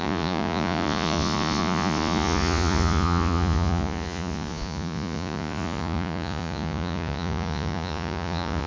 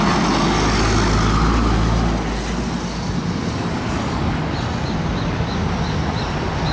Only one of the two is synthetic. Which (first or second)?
first